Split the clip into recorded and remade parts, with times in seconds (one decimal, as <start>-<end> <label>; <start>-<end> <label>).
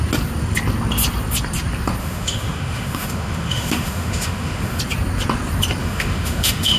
0.0-2.0 recorded; 2.0-4.8 remade; 4.8-5.8 recorded; 5.8-6.8 remade